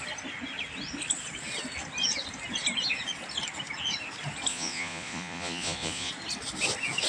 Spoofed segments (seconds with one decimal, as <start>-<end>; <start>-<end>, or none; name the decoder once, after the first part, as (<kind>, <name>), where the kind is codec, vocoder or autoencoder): 4.5-6.1 (vocoder, Vocos)